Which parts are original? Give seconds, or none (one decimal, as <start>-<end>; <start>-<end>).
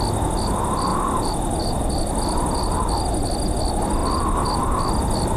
0.0-0.9; 2.2-5.4